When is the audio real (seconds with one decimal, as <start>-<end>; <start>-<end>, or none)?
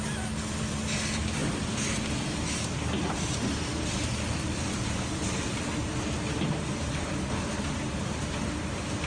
0.0-9.1